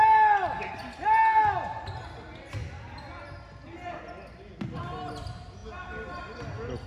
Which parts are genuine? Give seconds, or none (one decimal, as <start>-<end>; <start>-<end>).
0.0-6.9

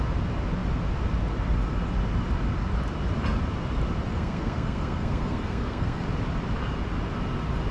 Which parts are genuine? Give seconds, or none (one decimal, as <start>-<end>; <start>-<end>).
0.0-4.1; 6.0-7.7

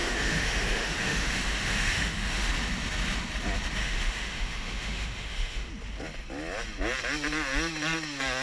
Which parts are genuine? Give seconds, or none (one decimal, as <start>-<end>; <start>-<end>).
2.5-3.8; 5.7-8.4

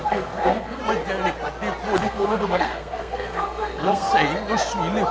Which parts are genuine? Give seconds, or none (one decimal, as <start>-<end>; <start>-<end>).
0.8-2.0; 4.1-5.1

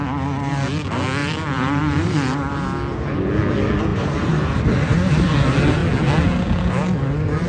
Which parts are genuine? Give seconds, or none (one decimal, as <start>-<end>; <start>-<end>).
0.0-1.2; 2.6-3.9; 4.6-7.5

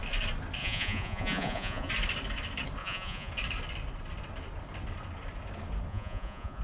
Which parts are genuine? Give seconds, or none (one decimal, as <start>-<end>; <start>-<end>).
0.0-0.6; 1.9-2.8; 3.3-5.9

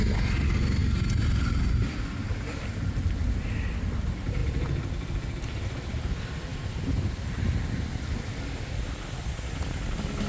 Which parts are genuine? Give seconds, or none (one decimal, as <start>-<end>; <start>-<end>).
0.0-10.3

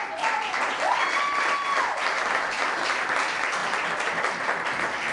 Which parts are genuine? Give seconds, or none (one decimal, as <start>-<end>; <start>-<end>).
0.0-5.1